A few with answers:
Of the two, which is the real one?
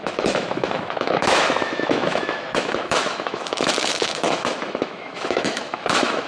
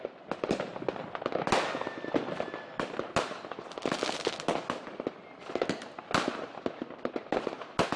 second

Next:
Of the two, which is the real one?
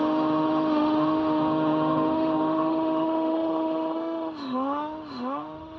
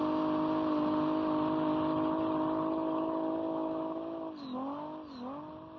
second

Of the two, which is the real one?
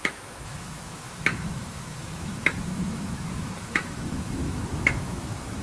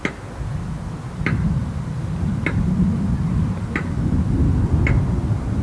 second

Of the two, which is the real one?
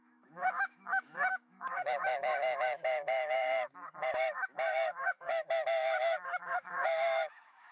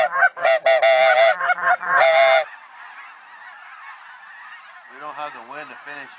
second